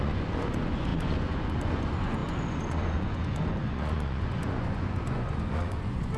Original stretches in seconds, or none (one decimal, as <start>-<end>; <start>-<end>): none